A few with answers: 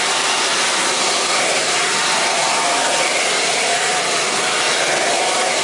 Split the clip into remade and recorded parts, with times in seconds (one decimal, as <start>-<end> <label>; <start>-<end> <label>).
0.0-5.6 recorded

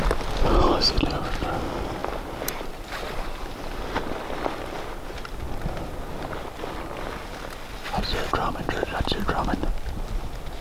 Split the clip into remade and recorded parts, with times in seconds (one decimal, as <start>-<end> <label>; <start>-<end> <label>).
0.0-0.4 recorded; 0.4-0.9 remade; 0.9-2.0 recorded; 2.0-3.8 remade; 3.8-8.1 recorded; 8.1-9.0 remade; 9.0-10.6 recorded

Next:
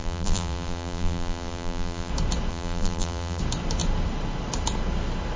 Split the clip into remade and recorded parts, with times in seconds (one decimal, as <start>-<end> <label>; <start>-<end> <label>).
0.0-2.1 remade; 2.1-2.5 recorded; 2.5-3.4 remade; 3.4-5.4 recorded